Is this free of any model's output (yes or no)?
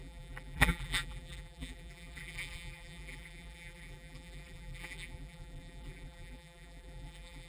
no